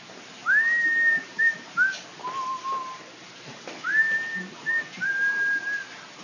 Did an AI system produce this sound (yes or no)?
no